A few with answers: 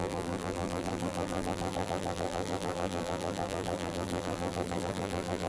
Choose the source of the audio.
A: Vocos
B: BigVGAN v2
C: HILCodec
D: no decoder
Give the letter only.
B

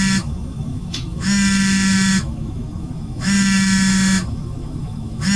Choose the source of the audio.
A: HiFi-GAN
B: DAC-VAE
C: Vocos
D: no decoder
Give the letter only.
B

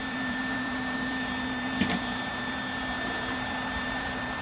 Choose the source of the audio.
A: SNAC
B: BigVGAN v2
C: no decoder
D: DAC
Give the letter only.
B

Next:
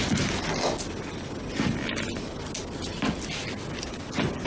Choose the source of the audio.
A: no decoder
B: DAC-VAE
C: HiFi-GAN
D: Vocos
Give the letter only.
A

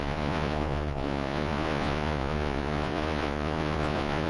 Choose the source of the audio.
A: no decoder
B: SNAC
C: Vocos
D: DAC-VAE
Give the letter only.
C